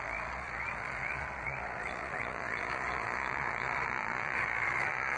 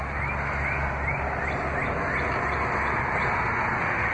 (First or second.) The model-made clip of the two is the first